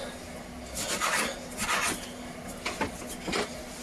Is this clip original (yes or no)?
yes